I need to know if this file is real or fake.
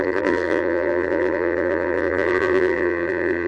fake